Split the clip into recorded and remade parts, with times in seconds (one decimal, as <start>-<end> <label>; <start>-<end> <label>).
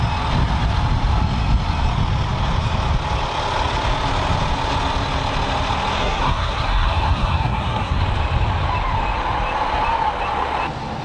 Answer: 0.0-6.0 recorded; 6.0-8.0 remade; 8.0-11.0 recorded